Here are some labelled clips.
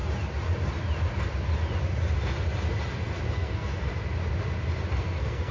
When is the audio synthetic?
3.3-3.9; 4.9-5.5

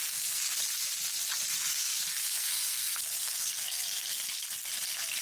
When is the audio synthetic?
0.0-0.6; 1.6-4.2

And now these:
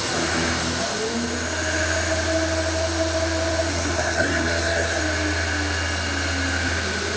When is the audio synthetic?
3.7-5.0